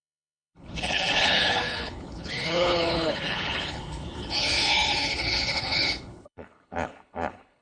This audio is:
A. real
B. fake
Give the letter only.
B